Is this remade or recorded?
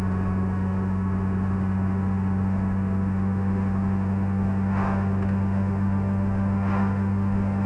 remade